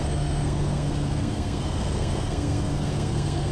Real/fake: fake